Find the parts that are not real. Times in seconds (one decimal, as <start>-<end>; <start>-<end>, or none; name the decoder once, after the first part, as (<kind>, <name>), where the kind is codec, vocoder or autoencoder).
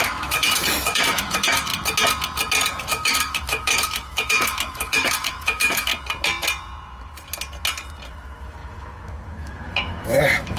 0.0-1.7 (autoencoder, DAC-VAE); 2.8-5.9; 8.1-10.6